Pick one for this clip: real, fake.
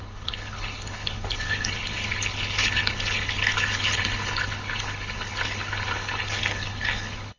fake